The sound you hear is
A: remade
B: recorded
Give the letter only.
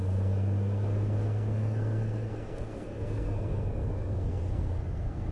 A